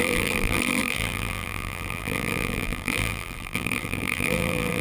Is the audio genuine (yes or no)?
no